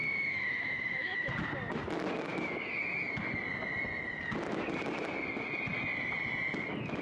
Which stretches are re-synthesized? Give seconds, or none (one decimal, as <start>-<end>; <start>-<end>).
0.0-1.3